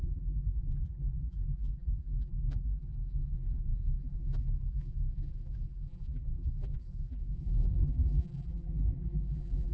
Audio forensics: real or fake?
fake